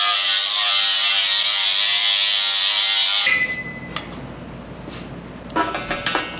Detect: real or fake real